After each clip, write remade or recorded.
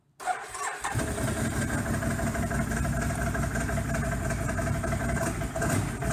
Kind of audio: recorded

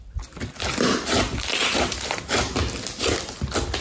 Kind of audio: recorded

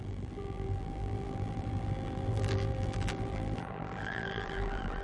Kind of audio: remade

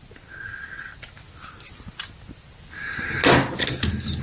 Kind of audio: recorded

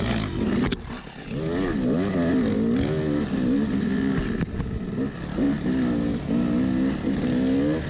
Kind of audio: recorded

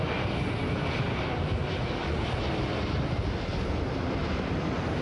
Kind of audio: remade